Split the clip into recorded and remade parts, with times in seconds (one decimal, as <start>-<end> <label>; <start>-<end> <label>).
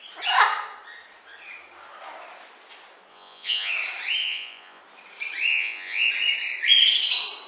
0.0-3.1 recorded; 3.1-3.7 remade; 3.7-4.2 recorded; 4.2-4.8 remade; 4.8-5.5 recorded; 5.5-6.1 remade; 6.1-7.5 recorded